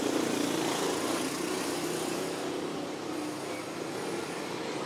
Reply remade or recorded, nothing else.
recorded